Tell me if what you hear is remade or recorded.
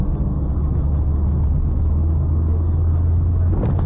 recorded